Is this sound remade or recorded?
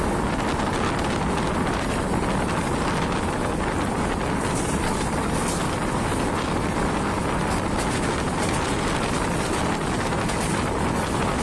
recorded